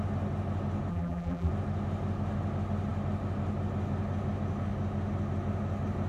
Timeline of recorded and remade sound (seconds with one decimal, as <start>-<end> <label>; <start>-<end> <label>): 0.0-0.9 recorded; 0.9-1.5 remade; 1.5-6.1 recorded